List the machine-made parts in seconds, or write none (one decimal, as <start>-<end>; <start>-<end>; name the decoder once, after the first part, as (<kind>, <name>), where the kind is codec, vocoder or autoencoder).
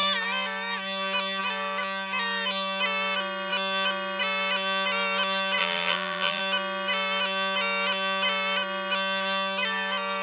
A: 5.6-6.4 (vocoder, BigVGAN v2)